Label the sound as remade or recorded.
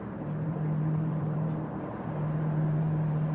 remade